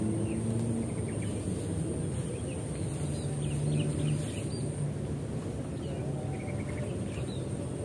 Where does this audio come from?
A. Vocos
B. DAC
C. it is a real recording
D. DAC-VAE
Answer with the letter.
C